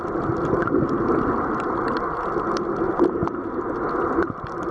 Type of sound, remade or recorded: recorded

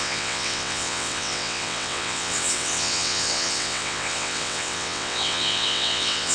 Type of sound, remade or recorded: remade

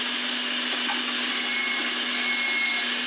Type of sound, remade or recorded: recorded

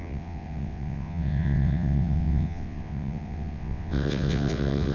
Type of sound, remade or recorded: remade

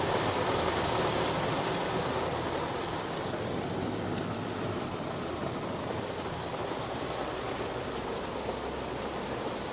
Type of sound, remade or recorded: remade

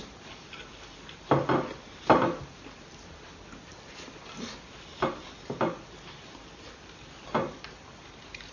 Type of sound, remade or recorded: recorded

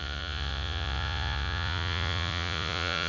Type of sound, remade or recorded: remade